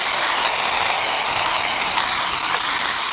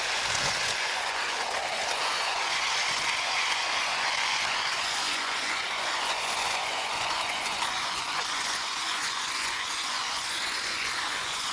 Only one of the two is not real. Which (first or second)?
second